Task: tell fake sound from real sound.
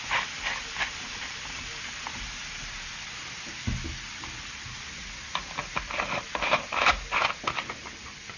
real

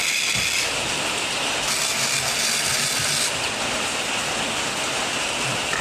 real